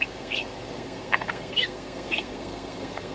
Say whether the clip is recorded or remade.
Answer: remade